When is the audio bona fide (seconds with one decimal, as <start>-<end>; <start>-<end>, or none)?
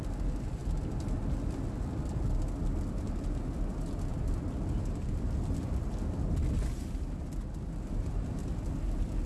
0.0-9.3